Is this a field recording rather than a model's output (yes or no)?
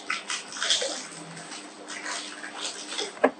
yes